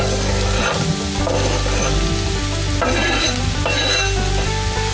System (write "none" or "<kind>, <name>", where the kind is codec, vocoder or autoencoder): none